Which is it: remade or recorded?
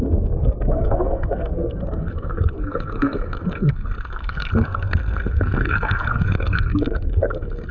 remade